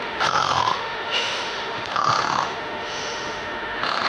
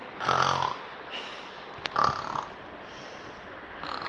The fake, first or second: first